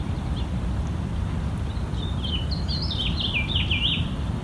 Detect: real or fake real